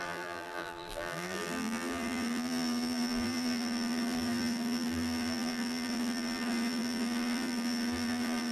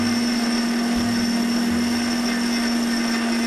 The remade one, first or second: first